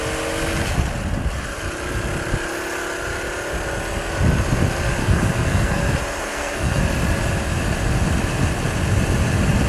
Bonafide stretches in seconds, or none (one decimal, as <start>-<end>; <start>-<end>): 0.0-5.0; 5.8-6.2; 6.8-9.7